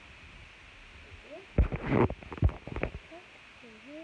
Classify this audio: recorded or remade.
recorded